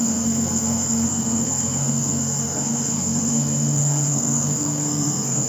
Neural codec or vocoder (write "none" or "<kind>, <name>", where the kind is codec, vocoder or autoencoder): codec, SNAC